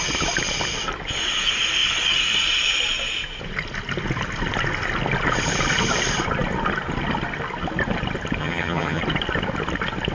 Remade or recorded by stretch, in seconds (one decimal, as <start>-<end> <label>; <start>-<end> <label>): 0.0-8.4 recorded; 8.4-9.0 remade; 9.0-10.1 recorded